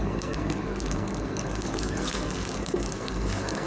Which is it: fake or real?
fake